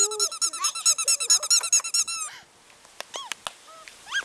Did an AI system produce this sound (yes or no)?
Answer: no